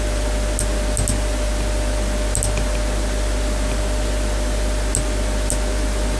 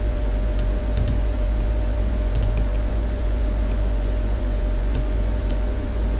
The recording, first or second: first